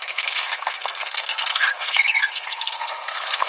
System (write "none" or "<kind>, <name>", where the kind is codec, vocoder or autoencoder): codec, SNAC